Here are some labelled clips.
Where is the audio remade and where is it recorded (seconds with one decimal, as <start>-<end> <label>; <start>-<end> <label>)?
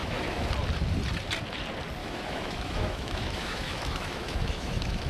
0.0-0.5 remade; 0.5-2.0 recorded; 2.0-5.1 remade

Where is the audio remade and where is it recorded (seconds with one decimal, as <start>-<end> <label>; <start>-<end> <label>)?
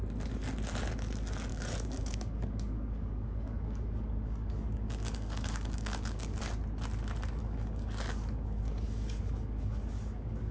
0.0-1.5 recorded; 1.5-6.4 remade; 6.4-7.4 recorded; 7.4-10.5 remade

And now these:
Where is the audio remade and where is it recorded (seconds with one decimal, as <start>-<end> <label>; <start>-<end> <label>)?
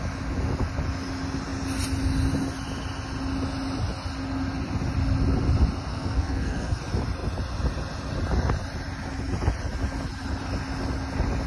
0.0-5.9 recorded; 5.9-6.8 remade; 6.8-11.5 recorded